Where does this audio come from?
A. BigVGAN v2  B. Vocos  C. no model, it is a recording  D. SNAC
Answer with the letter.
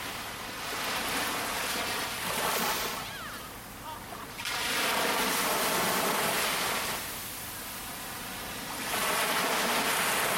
C